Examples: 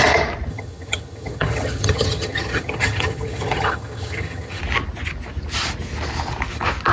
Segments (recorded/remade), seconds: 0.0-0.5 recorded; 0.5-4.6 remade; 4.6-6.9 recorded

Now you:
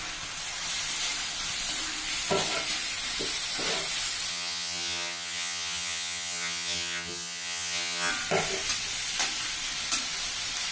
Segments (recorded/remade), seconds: 0.0-4.3 recorded; 4.3-8.1 remade; 8.1-10.7 recorded

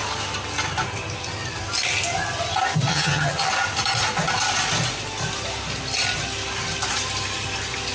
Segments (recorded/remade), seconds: 0.0-2.9 recorded; 2.9-3.5 remade; 3.5-7.9 recorded

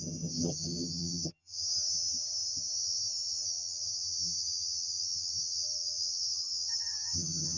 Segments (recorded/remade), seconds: 0.0-7.6 remade